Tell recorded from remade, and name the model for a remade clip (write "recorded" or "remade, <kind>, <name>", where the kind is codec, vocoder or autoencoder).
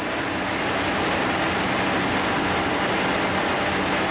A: recorded